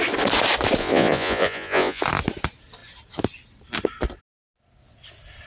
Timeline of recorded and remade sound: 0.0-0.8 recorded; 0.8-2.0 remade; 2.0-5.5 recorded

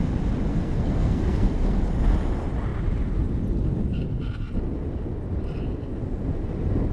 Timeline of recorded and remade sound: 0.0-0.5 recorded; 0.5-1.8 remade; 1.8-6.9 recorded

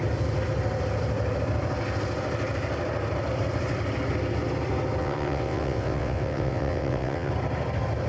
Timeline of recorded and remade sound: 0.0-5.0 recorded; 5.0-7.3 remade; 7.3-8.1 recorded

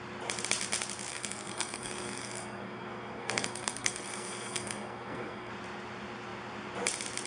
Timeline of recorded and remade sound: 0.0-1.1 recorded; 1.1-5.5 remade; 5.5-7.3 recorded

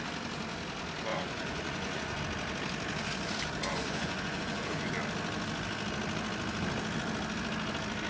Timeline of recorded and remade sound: 0.0-1.1 recorded; 1.1-2.2 remade; 2.2-3.7 recorded; 3.7-4.9 remade; 4.9-8.1 recorded

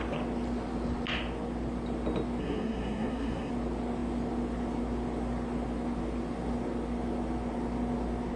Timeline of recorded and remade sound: 0.0-2.4 recorded; 2.4-3.5 remade; 3.5-8.4 recorded